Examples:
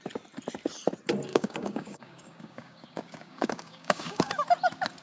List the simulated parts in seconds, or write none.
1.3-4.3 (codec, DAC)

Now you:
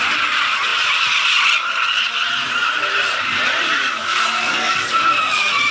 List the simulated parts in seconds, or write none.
3.8-5.1 (codec, DAC)

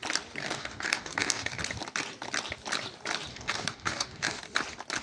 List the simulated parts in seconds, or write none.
0.4-1.6 (codec, DAC); 3.3-4.4

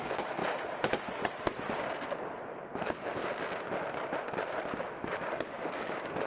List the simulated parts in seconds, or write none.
0.0-0.4 (codec, DAC); 2.8-3.2; 5.0-6.3

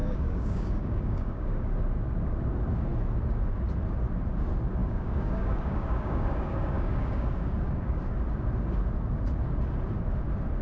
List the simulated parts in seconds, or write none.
0.0-1.8 (codec, DAC); 4.8-8.0